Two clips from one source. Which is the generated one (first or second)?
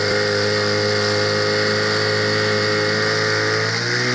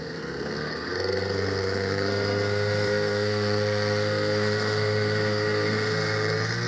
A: second